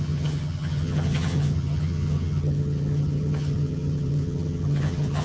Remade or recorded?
remade